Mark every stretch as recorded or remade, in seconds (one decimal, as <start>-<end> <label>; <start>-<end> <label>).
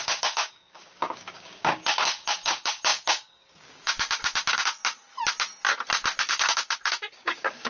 0.0-4.8 remade; 4.8-6.3 recorded; 6.3-7.7 remade